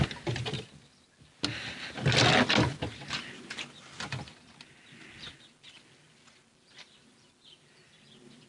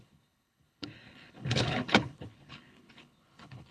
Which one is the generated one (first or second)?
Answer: second